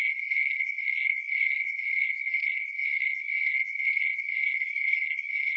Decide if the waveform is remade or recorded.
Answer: remade